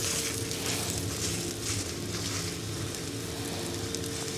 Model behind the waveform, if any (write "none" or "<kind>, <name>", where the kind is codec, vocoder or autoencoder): none